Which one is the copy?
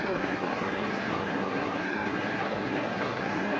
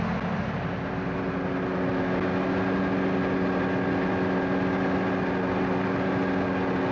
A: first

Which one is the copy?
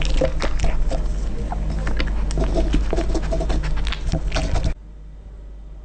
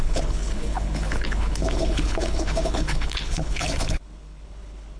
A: second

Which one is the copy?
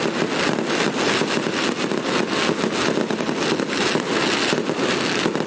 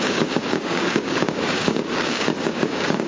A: second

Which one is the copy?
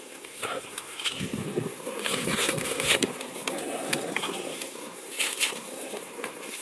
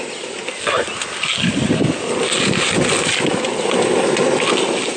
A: first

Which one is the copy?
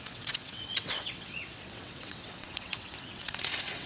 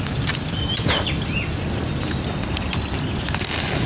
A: first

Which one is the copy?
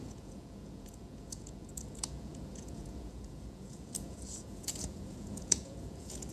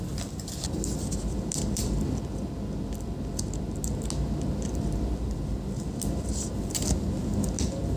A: first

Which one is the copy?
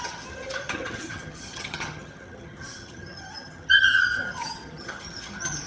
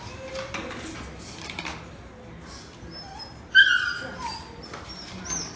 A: first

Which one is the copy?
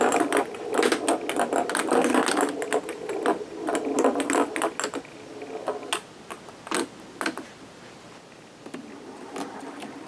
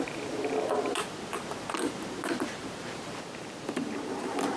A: second